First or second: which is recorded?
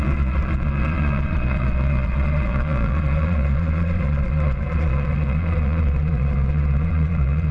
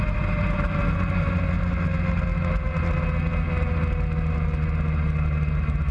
second